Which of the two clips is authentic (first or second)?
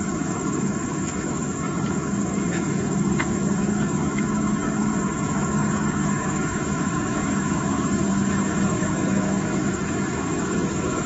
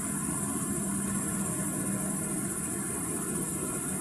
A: second